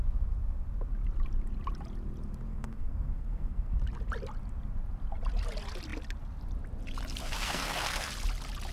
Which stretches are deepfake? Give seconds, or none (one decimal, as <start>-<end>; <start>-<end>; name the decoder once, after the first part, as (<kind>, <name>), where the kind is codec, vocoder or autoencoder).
2.5-3.8 (codec, SNAC); 7.2-8.1